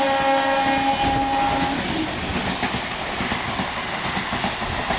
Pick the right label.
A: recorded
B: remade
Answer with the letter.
A